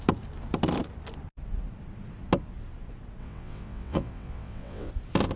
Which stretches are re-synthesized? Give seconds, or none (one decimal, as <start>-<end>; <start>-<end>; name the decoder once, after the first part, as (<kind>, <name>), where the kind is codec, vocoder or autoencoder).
3.2-4.9 (vocoder, WaveNeXt)